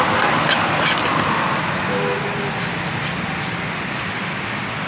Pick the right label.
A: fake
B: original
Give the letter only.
B